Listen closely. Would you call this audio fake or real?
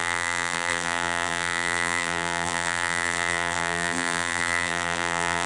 fake